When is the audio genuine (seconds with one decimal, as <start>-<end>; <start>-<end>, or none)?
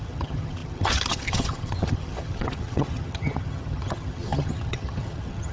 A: none